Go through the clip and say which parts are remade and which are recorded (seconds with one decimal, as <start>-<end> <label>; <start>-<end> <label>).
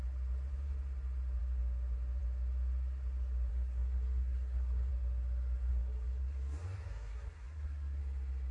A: 0.0-3.5 recorded; 3.5-4.9 remade; 4.9-5.7 recorded; 5.7-8.0 remade; 8.0-8.5 recorded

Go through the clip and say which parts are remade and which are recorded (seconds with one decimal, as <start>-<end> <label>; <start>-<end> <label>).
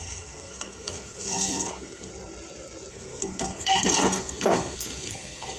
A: 0.0-2.1 remade; 2.1-2.9 recorded; 2.9-5.6 remade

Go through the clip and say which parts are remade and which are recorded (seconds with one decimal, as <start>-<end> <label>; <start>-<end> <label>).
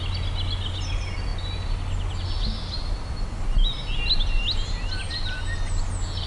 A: 0.0-6.3 recorded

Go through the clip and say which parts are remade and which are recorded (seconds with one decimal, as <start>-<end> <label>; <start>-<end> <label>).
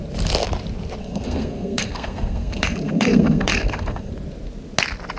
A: 0.0-1.0 recorded; 1.0-4.1 remade; 4.1-5.2 recorded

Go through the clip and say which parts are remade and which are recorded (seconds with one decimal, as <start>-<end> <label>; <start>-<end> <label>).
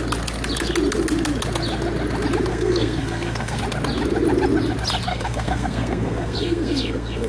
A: 0.0-2.5 recorded; 2.5-3.6 remade; 3.6-5.1 recorded; 5.1-7.3 remade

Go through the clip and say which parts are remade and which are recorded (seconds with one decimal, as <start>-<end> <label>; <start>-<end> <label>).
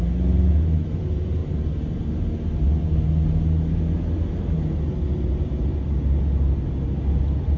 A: 0.0-7.6 recorded